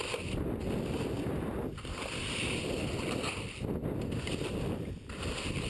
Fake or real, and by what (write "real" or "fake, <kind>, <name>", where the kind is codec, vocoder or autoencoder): real